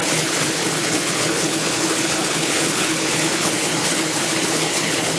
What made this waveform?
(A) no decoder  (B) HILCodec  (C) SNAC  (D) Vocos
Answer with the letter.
B